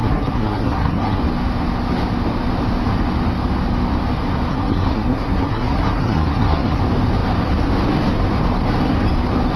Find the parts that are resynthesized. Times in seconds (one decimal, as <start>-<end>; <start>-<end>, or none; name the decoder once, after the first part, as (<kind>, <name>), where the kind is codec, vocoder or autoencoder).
0.0-1.2 (codec, SNAC); 4.5-6.8